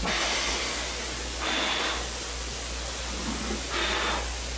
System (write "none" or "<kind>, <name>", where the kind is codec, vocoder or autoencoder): none